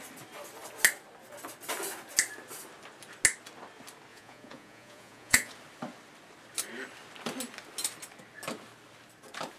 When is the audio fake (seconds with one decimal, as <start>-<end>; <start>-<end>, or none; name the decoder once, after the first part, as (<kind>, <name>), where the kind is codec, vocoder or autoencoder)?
4.1-5.5 (vocoder, Vocos)